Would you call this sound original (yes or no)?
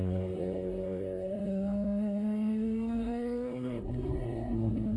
no